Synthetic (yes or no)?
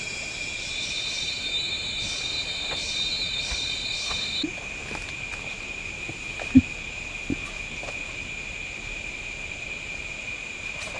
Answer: no